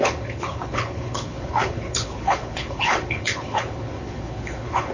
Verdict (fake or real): fake